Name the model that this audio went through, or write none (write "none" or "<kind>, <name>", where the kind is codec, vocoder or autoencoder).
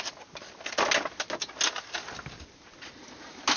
none